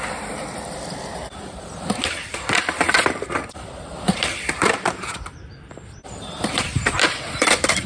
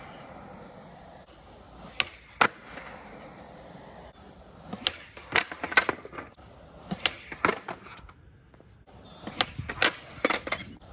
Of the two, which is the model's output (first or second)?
first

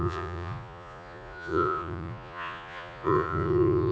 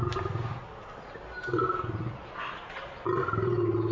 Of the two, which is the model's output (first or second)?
first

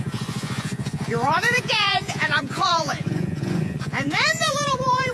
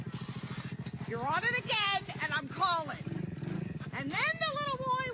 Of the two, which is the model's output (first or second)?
first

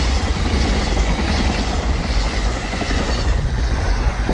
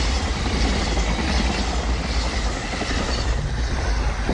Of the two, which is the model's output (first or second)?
first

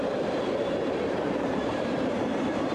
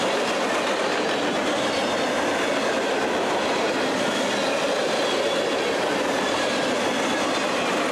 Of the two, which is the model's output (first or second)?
first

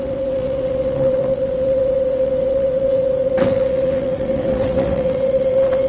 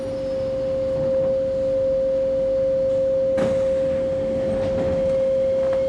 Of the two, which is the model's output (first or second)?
first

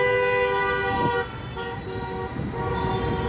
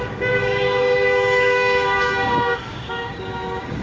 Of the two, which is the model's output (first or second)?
second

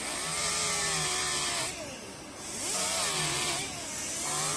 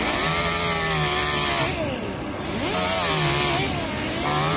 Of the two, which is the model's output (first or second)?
first